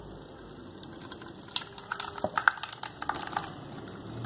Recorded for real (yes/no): yes